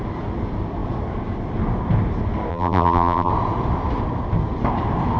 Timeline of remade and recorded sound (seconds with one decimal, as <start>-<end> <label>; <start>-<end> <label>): 0.0-2.5 recorded; 2.5-3.3 remade; 3.3-5.2 recorded